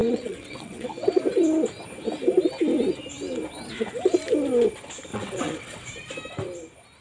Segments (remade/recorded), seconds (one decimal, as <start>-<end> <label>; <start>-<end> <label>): 0.0-1.2 remade; 1.2-5.1 recorded; 5.1-5.9 remade; 5.9-7.0 recorded